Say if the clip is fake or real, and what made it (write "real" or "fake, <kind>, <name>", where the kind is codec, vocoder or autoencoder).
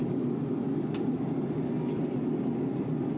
real